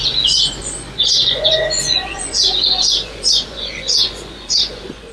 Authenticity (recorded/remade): remade